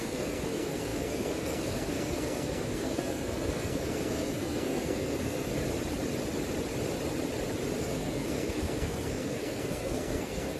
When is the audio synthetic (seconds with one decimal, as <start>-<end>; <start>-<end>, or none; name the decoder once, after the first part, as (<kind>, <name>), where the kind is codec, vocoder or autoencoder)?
0.0-5.5 (codec, SNAC); 7.8-10.6